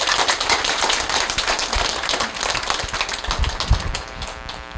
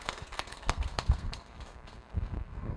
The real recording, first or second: first